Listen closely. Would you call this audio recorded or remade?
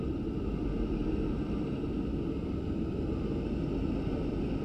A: recorded